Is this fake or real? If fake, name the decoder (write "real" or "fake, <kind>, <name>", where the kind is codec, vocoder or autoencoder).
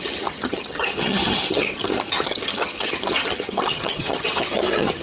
fake, vocoder, HiFi-GAN